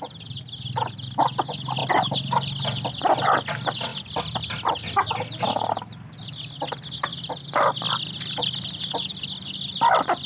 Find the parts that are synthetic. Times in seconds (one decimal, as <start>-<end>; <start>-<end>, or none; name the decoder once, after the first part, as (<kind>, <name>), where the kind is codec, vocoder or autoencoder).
1.8-2.9 (vocoder, BigVGAN v2)